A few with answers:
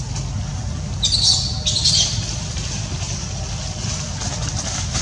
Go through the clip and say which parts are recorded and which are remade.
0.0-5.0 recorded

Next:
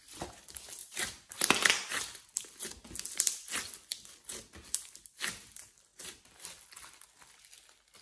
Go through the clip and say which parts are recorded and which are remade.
0.0-0.8 recorded; 0.8-1.3 remade; 1.3-8.0 recorded

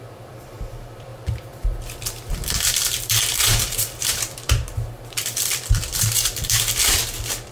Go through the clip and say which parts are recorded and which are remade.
0.0-7.5 remade

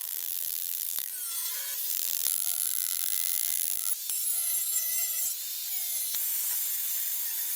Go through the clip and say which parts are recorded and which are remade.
0.0-1.1 remade; 1.1-1.9 recorded; 1.9-3.9 remade; 3.9-7.6 recorded

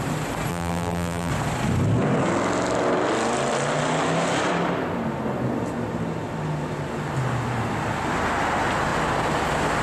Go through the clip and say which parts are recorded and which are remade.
0.0-0.5 recorded; 0.5-1.3 remade; 1.3-9.8 recorded

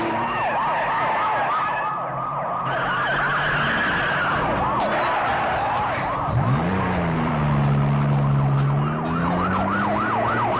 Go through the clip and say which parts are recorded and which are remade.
0.0-5.3 recorded; 5.3-7.3 remade; 7.3-10.6 recorded

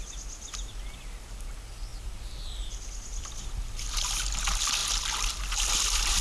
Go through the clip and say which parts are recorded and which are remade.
0.0-1.9 recorded; 1.9-3.7 remade; 3.7-6.2 recorded

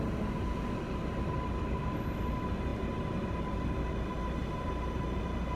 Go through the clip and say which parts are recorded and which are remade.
0.0-5.6 recorded